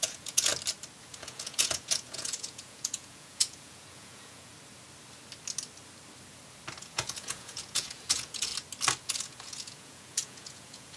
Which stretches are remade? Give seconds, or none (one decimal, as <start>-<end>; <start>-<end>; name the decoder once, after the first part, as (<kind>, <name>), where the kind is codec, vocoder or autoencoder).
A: 0.0-0.5 (vocoder, Vocos); 1.0-4.5; 6.8-8.5; 9.0-11.0